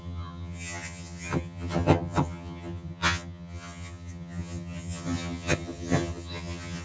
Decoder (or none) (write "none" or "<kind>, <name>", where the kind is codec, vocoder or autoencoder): vocoder, HiFi-GAN